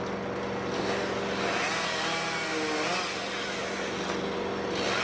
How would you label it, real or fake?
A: real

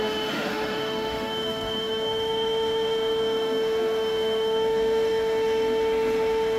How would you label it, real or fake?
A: fake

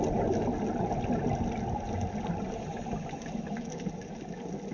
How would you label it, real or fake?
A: real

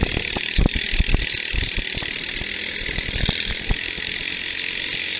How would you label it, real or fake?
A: real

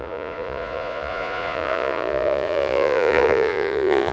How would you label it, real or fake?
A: fake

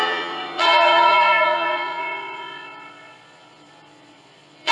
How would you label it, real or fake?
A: fake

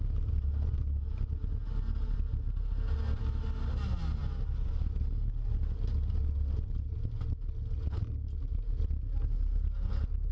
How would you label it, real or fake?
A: real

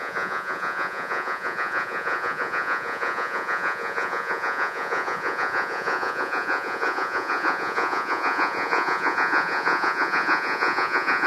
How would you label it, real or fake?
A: fake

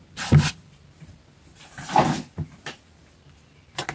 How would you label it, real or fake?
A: real